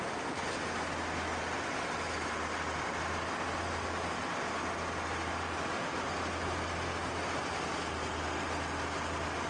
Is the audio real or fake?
real